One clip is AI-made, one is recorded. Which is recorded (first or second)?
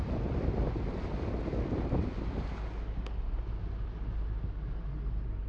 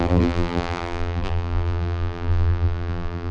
first